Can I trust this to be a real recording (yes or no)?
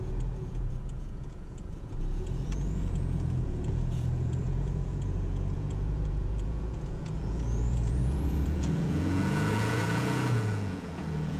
no